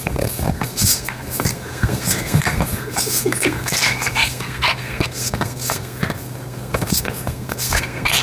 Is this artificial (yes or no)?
yes